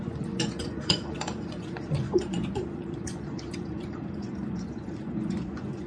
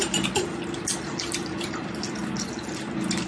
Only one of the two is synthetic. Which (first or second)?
first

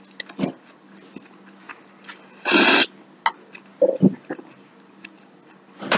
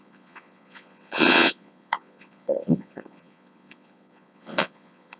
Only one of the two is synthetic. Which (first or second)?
second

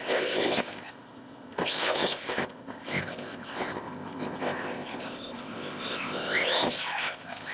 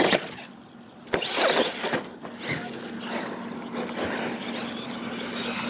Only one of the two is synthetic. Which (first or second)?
first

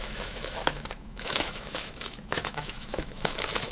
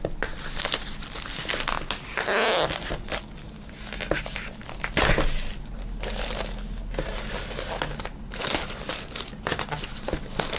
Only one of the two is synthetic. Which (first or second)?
first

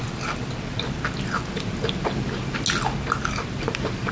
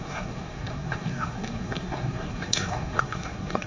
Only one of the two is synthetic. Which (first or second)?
second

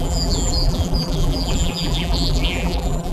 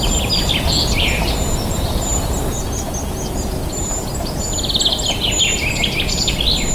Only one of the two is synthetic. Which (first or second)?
first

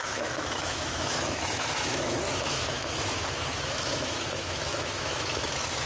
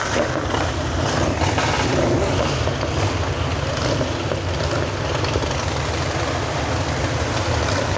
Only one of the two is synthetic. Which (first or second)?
first